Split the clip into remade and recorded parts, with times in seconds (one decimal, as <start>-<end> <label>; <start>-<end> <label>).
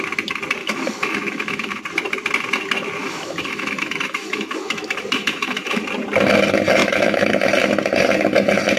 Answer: 0.0-0.6 recorded; 0.6-1.8 remade; 1.8-3.0 recorded; 3.0-5.8 remade; 5.8-6.8 recorded; 6.8-7.3 remade; 7.3-8.8 recorded